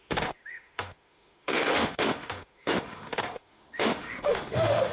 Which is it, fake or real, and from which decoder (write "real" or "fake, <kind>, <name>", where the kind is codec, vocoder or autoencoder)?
fake, autoencoder, DAC-VAE